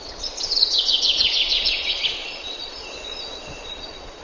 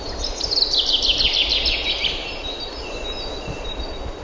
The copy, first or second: first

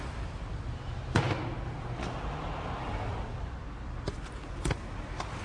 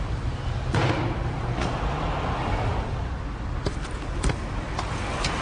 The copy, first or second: second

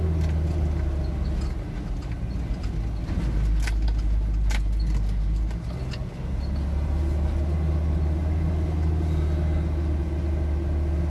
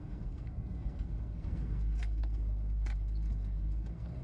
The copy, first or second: second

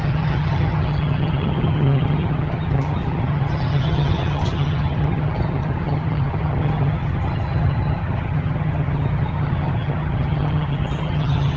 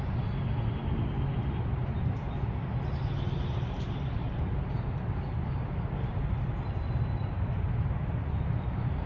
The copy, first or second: first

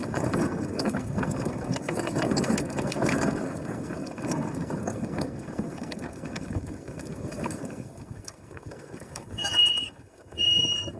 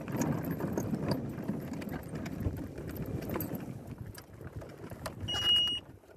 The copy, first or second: first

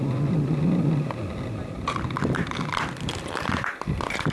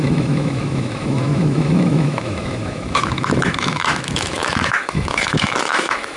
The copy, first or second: second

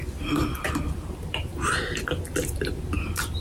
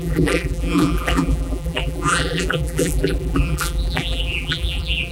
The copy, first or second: second